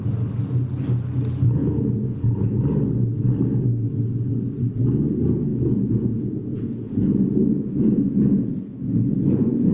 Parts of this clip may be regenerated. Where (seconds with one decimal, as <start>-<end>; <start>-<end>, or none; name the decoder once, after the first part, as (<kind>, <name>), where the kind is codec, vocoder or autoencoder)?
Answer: 1.6-2.6 (vocoder, Vocos); 5.5-9.7